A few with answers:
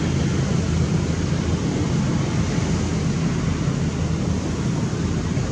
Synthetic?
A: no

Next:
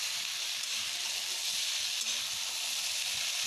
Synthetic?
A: no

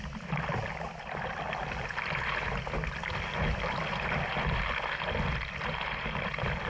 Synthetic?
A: no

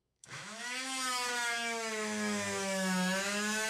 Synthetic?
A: yes